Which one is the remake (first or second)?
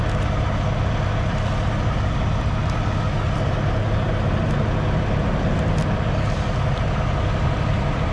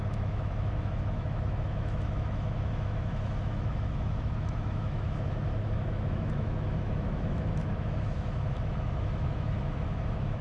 second